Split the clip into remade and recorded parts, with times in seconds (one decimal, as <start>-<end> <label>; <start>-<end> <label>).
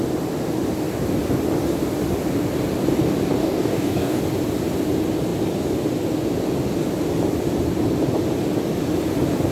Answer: 0.0-3.4 recorded; 3.4-4.2 remade; 4.2-9.5 recorded